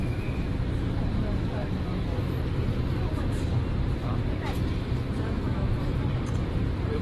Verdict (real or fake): fake